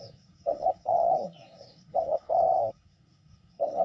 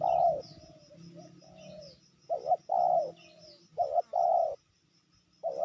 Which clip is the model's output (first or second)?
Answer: first